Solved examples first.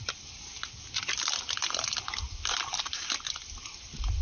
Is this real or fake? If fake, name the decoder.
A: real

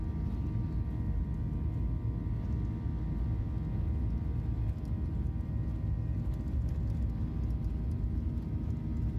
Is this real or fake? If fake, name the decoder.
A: real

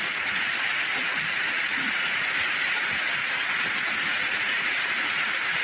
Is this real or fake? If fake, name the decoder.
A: fake, vocoder, Vocos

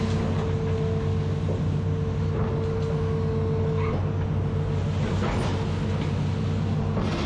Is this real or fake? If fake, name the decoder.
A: real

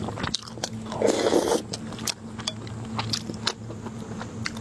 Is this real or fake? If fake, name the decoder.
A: real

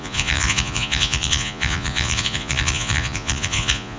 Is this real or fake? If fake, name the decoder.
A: fake, vocoder, Vocos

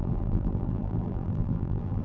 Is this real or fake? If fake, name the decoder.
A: fake, vocoder, BigVGAN v2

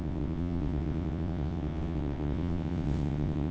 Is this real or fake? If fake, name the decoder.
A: fake, vocoder, WaveNeXt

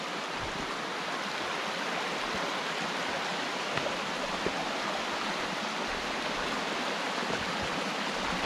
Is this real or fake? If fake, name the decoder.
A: real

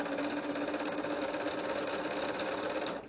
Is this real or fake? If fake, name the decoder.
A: real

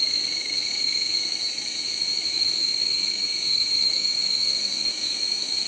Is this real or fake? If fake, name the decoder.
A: fake, autoencoder, DAC-VAE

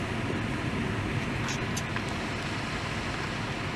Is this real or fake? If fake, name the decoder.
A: real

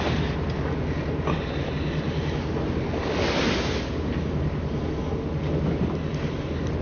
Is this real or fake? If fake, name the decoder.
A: real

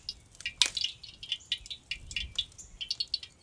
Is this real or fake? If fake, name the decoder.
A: real